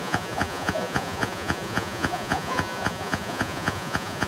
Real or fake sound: fake